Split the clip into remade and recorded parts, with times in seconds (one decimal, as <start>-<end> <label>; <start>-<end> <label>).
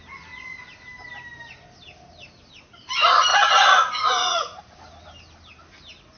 0.0-3.3 recorded; 3.3-4.6 remade; 4.6-6.2 recorded